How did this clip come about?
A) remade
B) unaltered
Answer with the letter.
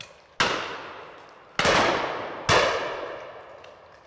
B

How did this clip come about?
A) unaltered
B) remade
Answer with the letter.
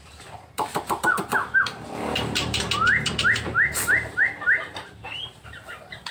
B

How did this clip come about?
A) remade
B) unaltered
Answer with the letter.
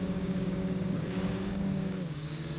A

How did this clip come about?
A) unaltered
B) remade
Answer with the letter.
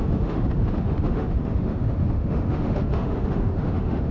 B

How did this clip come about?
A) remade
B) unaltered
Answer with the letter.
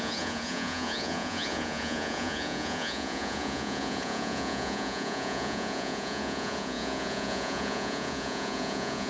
A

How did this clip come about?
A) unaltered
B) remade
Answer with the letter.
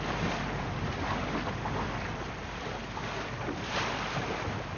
A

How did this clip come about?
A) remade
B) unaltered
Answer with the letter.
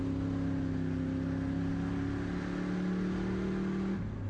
B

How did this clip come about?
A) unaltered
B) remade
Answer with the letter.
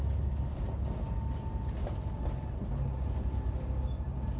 A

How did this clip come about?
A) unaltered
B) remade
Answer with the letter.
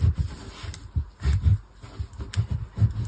A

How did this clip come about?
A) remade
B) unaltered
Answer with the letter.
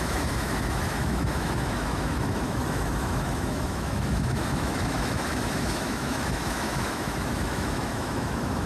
A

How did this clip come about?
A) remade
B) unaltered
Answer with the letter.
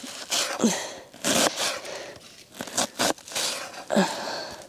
B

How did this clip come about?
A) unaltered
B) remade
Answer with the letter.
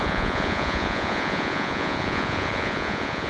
B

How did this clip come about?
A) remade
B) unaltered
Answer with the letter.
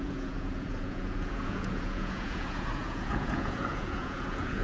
A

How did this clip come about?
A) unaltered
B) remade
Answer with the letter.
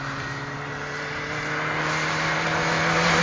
A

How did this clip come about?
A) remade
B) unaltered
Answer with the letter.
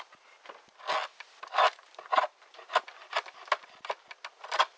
B